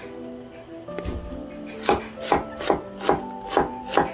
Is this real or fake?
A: real